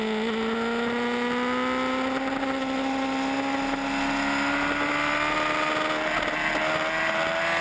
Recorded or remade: recorded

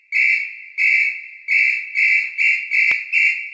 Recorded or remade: recorded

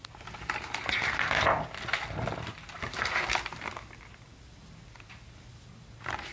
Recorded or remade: recorded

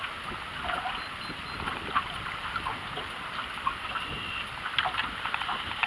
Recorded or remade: recorded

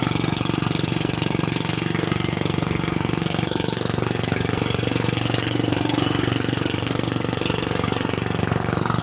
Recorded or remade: remade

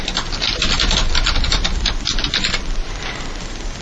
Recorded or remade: recorded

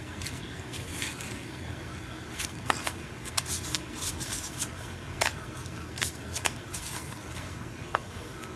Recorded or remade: remade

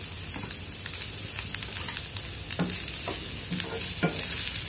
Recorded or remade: recorded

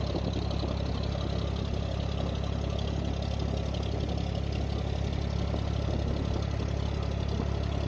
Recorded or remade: recorded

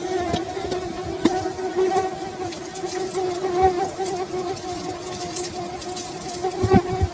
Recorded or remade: recorded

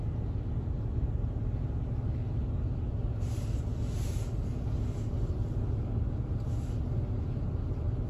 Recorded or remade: recorded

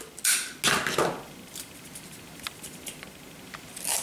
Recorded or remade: recorded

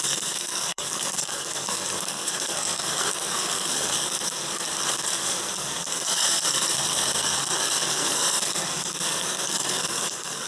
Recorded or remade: remade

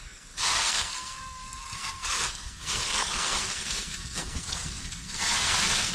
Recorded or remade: remade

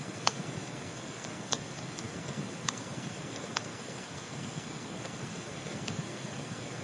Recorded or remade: remade